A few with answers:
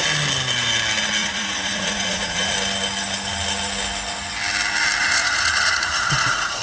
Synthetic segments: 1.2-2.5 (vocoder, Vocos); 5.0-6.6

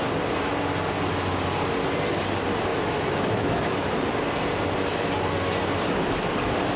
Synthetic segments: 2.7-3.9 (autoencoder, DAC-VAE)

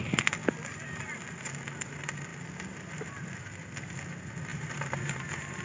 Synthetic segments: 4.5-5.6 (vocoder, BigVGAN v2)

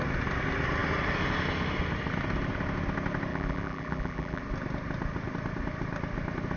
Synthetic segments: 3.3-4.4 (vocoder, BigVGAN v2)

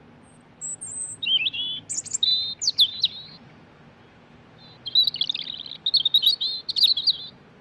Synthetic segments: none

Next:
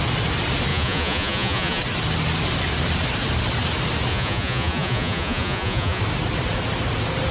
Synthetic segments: 0.7-1.8 (vocoder, Vocos); 4.1-6.0

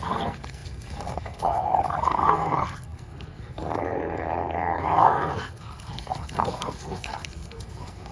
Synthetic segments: 0.0-8.1 (codec, SNAC)

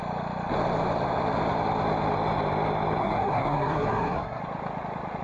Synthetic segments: 3.0-4.4 (codec, SNAC)